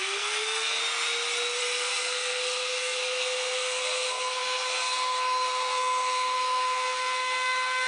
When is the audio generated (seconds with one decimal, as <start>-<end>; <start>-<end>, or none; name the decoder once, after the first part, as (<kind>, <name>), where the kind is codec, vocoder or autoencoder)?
0.0-0.8 (codec, SNAC); 1.6-7.9